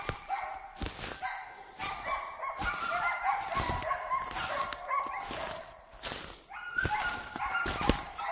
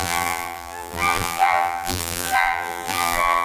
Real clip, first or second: first